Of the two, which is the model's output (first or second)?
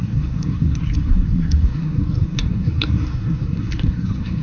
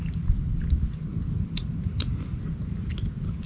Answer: first